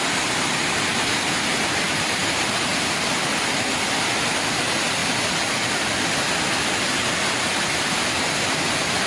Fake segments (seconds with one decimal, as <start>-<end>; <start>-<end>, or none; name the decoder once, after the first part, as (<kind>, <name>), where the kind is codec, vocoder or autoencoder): none